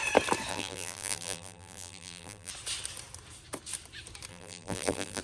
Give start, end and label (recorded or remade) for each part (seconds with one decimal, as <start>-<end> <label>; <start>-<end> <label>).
0.0-0.5 recorded; 0.5-2.5 remade; 2.5-4.3 recorded; 4.3-5.2 remade

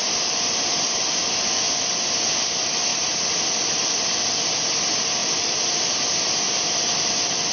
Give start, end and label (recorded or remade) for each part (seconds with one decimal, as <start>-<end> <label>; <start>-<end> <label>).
0.0-1.4 remade; 1.4-2.9 recorded; 2.9-3.9 remade; 3.9-5.2 recorded; 5.2-6.3 remade; 6.3-7.5 recorded

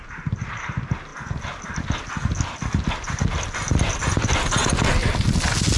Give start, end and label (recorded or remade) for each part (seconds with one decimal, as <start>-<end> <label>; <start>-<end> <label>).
0.0-0.7 remade; 0.7-5.8 recorded

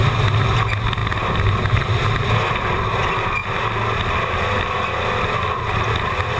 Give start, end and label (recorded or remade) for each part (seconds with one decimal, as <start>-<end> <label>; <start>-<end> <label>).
0.0-6.4 recorded

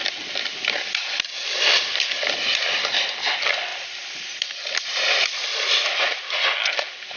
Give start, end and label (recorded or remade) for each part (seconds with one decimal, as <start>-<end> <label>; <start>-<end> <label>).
0.0-1.4 recorded; 1.4-2.2 remade; 2.2-3.7 recorded; 3.7-6.4 remade; 6.4-7.2 recorded

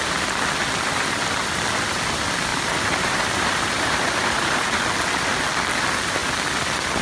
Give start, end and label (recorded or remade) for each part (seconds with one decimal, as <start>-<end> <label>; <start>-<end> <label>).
0.0-2.5 recorded; 2.5-4.8 remade; 4.8-7.0 recorded

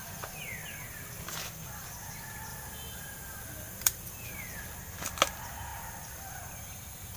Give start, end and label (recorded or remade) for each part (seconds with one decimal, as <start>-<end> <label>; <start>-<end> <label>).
0.0-2.5 recorded; 2.5-4.6 remade; 4.6-5.7 recorded; 5.7-6.3 remade; 6.3-7.2 recorded